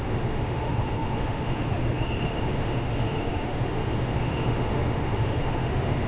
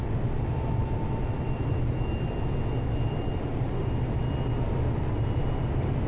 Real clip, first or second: second